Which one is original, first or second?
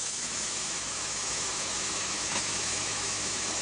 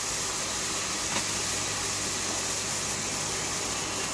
second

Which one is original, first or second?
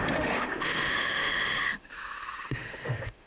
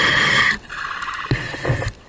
second